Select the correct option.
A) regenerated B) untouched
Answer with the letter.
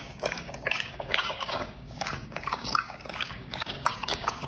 A